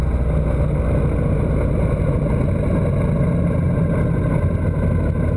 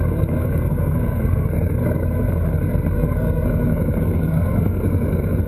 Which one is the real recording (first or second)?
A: first